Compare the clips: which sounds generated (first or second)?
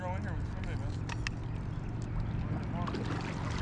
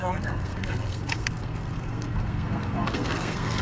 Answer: second